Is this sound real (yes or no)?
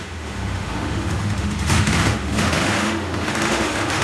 no